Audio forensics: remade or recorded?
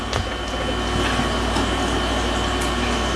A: recorded